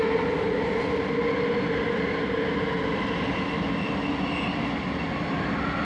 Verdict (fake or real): real